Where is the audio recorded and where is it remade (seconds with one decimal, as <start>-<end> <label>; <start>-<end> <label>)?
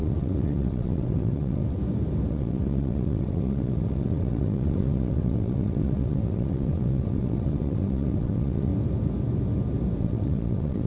0.0-1.8 remade; 1.8-2.3 recorded; 2.3-8.7 remade; 8.7-10.0 recorded; 10.0-10.9 remade